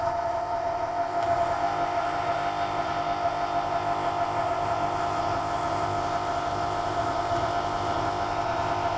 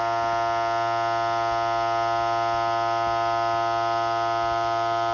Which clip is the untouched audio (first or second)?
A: second